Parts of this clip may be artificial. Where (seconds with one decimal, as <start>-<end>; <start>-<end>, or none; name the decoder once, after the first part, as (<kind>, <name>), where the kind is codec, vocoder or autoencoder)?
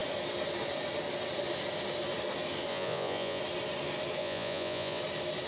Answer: 2.7-3.4 (vocoder, Vocos); 4.2-5.0